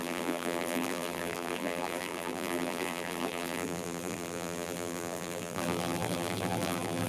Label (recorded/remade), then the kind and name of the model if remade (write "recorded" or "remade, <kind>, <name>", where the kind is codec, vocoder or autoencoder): remade, vocoder, BigVGAN v2